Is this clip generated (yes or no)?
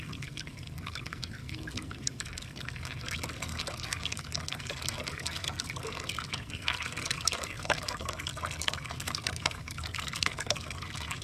yes